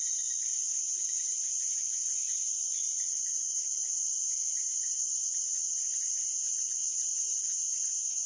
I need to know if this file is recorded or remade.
recorded